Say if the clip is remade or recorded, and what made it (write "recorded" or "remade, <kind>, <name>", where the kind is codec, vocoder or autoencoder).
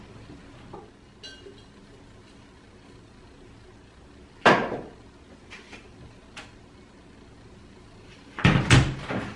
recorded